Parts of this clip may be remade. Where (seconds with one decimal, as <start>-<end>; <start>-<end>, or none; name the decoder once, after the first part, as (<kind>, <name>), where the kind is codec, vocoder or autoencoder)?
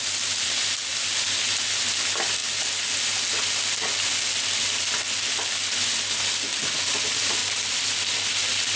0.0-2.4 (vocoder, BigVGAN v2); 6.2-7.4; 8.4-8.8